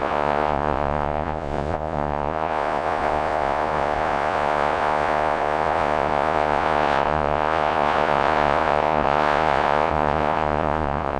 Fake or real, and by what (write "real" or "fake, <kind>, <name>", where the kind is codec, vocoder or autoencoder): fake, vocoder, Vocos